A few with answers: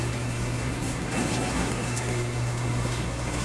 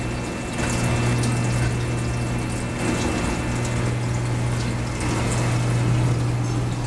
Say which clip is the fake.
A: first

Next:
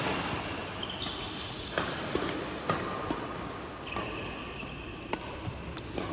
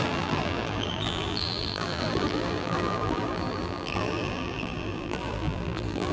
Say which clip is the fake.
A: second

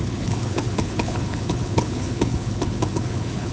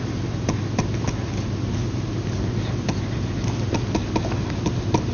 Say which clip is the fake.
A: first